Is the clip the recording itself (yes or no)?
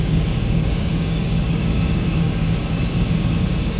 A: no